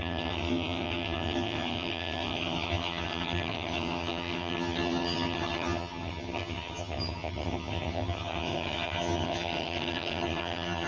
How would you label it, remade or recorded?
remade